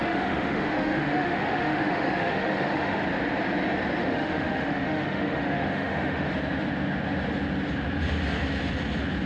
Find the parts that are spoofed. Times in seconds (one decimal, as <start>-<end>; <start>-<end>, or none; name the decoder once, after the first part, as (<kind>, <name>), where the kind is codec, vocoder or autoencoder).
0.0-3.0 (autoencoder, DAC-VAE); 4.0-6.3